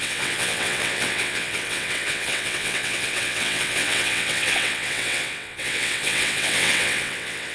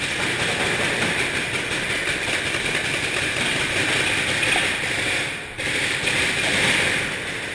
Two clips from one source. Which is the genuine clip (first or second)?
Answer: second